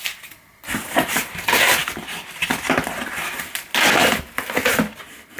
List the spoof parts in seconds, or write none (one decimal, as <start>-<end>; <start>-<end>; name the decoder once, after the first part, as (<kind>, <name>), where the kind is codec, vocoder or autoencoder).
none